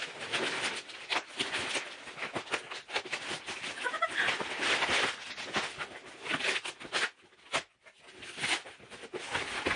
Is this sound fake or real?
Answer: real